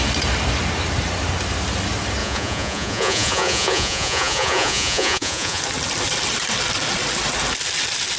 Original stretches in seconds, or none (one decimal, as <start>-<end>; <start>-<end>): 0.0-2.2; 5.6-8.2